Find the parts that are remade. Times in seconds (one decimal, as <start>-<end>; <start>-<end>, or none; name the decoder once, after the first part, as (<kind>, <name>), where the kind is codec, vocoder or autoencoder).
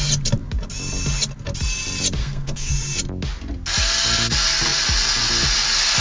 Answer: 2.2-2.7 (codec, SNAC)